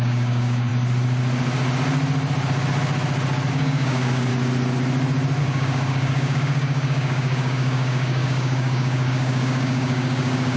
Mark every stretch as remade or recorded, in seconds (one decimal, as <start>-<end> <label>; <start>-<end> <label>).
0.0-0.7 remade; 0.7-3.5 recorded; 3.5-4.3 remade; 4.3-5.4 recorded; 5.4-10.6 remade